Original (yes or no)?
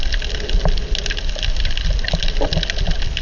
yes